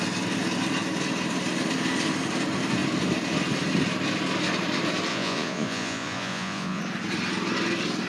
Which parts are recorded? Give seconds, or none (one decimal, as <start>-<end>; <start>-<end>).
0.0-5.1; 6.8-8.1